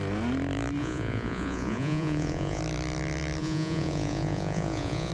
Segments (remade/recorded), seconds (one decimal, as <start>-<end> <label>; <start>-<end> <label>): 0.0-0.8 recorded; 0.8-2.6 remade; 2.6-3.4 recorded; 3.4-5.1 remade